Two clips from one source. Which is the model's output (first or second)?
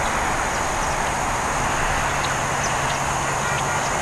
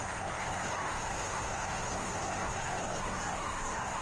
second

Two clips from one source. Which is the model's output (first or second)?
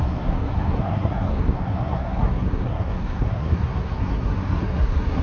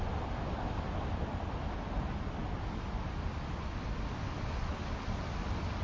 first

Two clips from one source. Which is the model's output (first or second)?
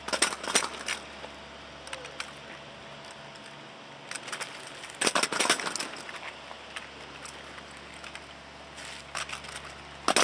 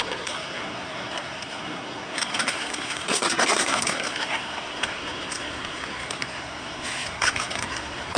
second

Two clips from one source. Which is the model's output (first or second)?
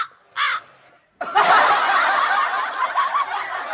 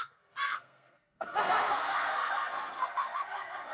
second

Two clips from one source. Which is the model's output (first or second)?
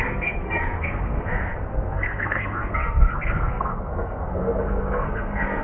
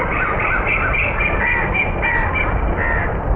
first